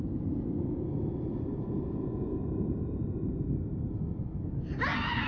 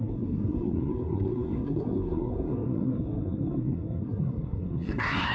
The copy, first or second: second